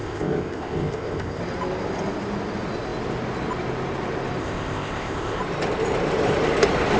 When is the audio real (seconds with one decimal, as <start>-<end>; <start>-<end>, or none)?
1.4-4.4; 5.4-7.0